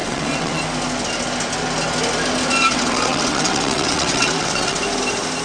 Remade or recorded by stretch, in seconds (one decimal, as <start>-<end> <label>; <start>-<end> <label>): 0.0-0.6 remade; 0.6-2.7 recorded; 2.7-4.8 remade; 4.8-5.4 recorded